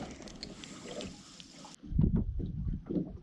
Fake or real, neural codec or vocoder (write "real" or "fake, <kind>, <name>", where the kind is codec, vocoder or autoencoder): real